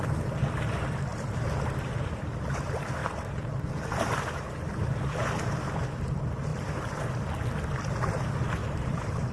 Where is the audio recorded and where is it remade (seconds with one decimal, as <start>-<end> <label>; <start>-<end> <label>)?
0.0-3.0 recorded; 3.0-4.4 remade; 4.4-6.5 recorded; 6.5-7.1 remade; 7.1-8.6 recorded; 8.6-9.3 remade